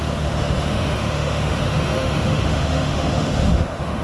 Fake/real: fake